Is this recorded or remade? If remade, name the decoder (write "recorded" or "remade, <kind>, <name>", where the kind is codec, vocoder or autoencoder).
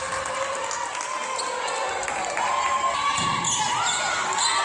recorded